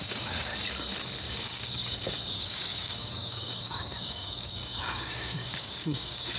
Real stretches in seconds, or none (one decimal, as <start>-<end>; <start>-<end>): 0.5-1.2